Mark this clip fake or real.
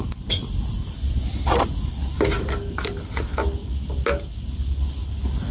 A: real